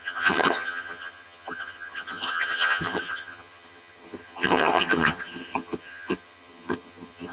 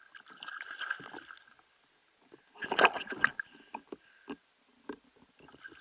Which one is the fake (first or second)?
first